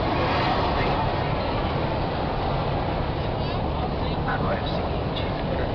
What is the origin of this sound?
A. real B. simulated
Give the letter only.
A